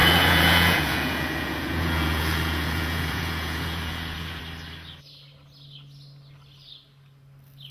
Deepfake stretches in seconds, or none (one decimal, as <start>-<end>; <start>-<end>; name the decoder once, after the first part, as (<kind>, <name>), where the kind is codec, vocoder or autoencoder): 0.0-4.4 (vocoder, Vocos)